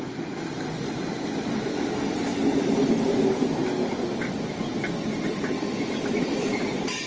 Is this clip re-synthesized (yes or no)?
no